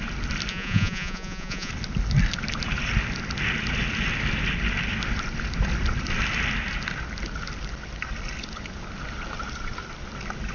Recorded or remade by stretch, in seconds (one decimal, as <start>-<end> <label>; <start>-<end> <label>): 0.0-0.5 recorded; 0.5-1.7 remade; 1.7-10.5 recorded